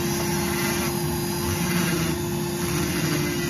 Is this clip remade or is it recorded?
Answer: recorded